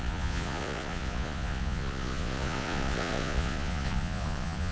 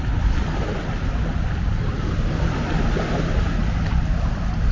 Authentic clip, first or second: second